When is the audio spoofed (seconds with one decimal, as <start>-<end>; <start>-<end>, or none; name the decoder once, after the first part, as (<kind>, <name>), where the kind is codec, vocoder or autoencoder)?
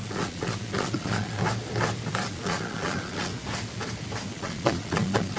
0.0-1.4 (vocoder, Vocos); 2.3-3.3; 4.3-5.4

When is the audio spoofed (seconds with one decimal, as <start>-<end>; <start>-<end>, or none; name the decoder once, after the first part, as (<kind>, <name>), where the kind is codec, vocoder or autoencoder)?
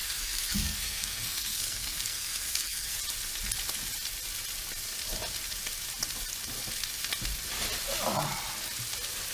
0.0-3.0 (codec, SNAC)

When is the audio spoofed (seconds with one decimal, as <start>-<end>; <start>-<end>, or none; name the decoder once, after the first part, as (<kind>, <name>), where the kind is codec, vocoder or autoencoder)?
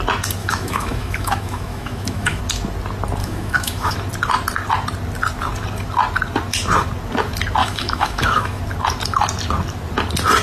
0.4-2.4 (autoencoder, DAC-VAE); 3.2-3.9; 7.6-8.6